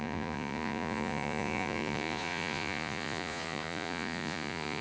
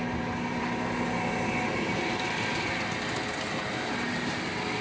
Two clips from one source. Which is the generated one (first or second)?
first